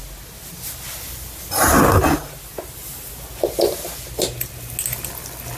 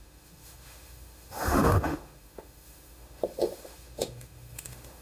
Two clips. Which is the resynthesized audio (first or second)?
second